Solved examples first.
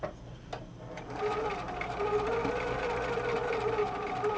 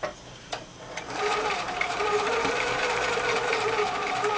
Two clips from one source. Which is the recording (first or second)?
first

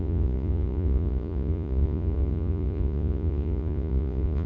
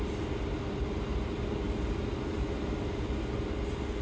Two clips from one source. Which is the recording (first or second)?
second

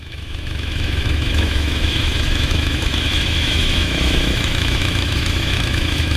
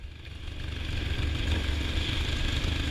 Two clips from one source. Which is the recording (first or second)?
second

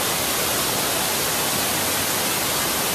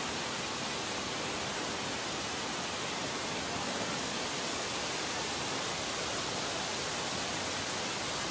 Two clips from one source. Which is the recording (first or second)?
first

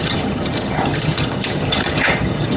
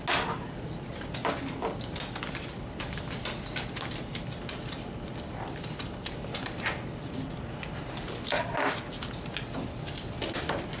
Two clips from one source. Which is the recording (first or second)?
second